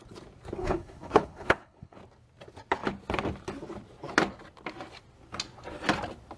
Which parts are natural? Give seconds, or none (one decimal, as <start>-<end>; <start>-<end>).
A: 0.0-0.6; 2.0-6.4